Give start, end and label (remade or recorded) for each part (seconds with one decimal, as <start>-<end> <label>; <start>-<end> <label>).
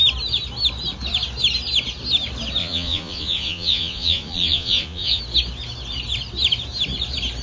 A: 0.0-2.6 recorded; 2.6-5.2 remade; 5.2-7.4 recorded